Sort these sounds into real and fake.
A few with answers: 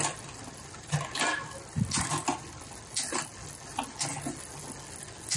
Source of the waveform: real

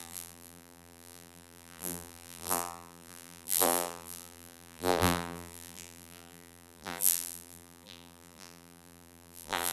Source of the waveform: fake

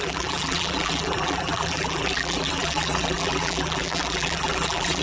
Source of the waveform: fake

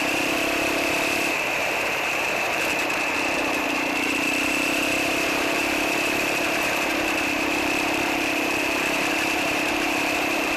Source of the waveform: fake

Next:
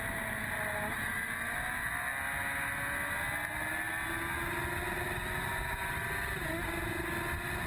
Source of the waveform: real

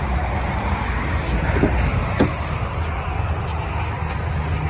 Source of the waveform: real